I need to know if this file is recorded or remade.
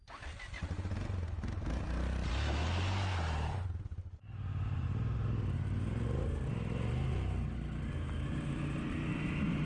recorded